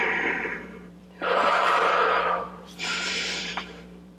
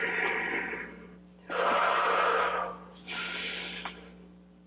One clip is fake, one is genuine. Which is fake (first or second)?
first